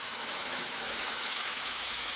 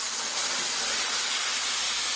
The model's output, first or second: first